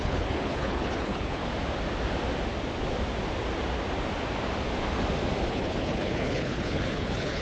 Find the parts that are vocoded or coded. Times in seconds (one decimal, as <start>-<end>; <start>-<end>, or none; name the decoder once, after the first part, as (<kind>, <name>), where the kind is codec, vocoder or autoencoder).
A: 0.0-1.4 (codec, HILCodec); 5.5-7.4